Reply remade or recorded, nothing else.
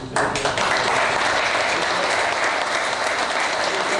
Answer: recorded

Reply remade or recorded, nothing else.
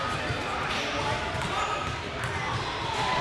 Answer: recorded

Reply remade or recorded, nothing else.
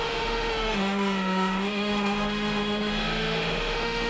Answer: remade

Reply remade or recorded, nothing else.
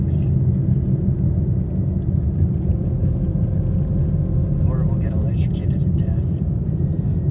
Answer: recorded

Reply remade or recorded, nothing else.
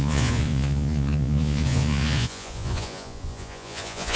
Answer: remade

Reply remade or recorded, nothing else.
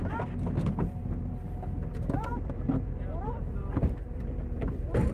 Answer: remade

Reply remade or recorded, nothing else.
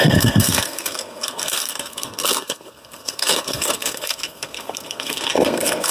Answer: remade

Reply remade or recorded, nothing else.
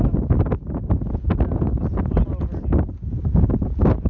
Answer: recorded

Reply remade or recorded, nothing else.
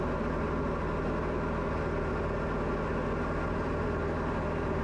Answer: recorded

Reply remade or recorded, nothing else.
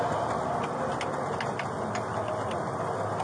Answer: recorded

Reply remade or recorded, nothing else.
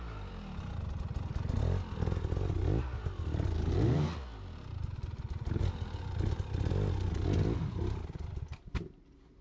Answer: recorded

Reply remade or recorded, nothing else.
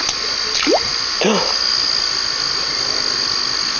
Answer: recorded